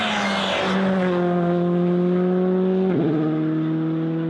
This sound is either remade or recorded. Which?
recorded